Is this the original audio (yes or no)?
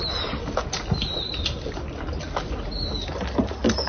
yes